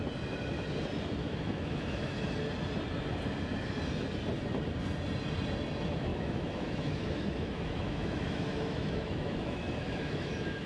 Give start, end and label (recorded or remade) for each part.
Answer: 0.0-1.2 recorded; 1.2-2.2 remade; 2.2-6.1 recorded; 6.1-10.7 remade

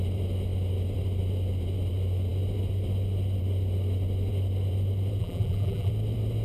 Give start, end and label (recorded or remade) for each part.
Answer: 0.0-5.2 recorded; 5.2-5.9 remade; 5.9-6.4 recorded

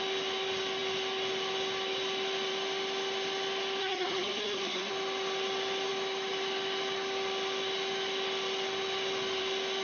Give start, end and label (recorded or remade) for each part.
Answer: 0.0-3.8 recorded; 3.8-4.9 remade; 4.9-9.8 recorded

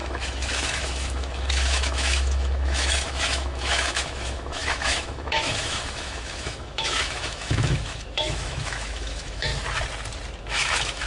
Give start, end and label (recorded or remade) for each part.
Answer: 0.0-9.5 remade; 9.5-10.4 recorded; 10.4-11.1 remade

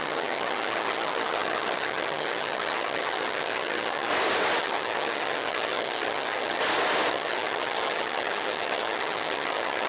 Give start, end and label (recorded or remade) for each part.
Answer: 0.0-4.1 remade; 4.1-4.6 recorded; 4.6-6.6 remade; 6.6-7.1 recorded; 7.1-9.9 remade

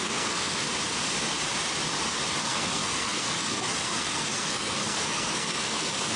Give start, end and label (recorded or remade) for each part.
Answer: 0.0-0.7 remade; 0.7-2.4 recorded; 2.4-6.2 remade

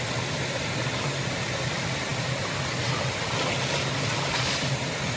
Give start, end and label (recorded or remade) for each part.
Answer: 0.0-5.2 recorded